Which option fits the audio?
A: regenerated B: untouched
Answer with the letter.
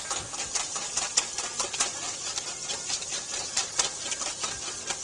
B